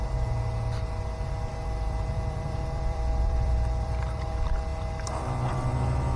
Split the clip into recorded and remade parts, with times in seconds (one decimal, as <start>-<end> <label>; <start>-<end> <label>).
0.0-1.5 recorded; 1.5-4.3 remade; 4.3-6.2 recorded